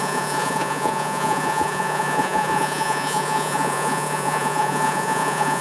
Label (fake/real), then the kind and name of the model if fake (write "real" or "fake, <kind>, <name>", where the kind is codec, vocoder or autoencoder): fake, vocoder, Vocos